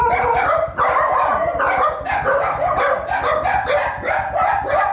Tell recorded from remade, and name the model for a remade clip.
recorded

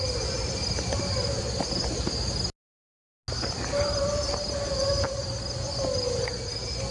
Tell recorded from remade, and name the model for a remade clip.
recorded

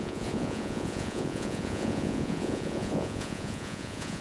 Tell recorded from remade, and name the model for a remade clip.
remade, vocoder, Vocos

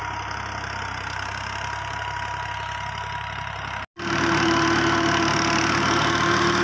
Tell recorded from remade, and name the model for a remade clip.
recorded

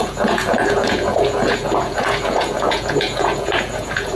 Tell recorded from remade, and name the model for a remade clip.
remade, vocoder, Vocos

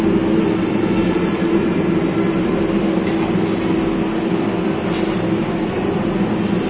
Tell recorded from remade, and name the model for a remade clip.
recorded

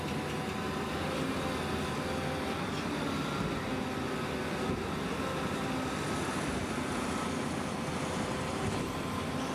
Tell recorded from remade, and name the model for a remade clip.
recorded